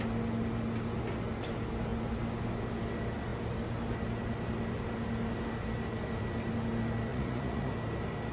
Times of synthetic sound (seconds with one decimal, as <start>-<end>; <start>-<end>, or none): 7.1-7.7